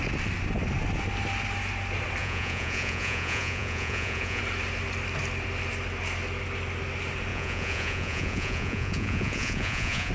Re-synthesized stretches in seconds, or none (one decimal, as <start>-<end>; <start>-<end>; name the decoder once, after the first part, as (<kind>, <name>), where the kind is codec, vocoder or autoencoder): 2.2-4.4 (vocoder, Vocos); 7.3-10.1